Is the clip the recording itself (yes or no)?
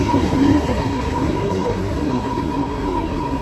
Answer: no